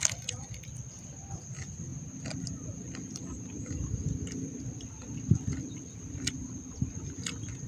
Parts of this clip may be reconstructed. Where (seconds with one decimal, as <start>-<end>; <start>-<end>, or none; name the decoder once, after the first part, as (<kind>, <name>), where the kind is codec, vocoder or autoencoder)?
none